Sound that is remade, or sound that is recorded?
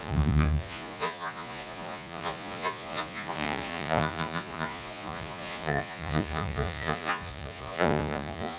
remade